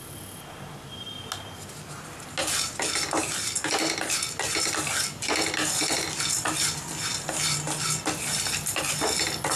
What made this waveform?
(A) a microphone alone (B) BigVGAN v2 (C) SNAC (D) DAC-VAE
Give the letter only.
A